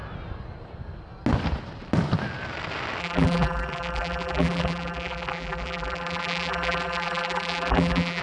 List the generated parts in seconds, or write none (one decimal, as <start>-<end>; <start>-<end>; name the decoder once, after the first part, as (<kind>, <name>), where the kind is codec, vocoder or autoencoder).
3.0-8.2 (vocoder, BigVGAN v2)